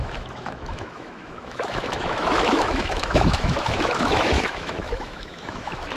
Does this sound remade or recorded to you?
remade